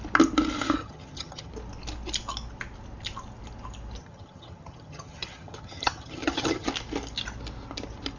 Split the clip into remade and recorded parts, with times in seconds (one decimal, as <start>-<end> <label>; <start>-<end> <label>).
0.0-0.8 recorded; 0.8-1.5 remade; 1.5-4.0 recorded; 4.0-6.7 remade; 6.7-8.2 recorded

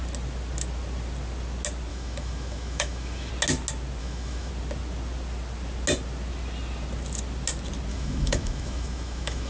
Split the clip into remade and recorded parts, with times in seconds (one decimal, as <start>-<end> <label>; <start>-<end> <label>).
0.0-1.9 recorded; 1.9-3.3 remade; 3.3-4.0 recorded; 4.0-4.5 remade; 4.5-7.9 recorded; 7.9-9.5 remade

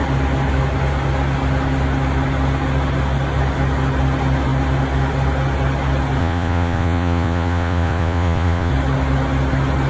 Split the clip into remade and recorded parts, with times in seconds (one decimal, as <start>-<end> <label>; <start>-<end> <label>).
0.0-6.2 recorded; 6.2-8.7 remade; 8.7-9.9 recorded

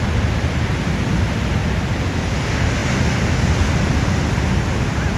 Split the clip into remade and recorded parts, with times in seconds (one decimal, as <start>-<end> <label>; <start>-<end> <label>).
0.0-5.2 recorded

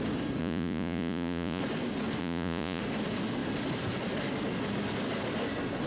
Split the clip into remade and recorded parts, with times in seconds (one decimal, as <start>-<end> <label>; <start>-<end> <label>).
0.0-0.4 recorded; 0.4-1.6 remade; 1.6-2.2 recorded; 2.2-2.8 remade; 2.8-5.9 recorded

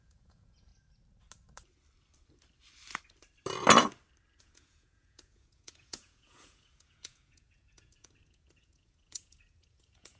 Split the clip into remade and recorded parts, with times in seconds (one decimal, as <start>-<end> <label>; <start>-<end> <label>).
0.0-0.7 remade; 0.7-4.4 recorded; 4.4-10.2 remade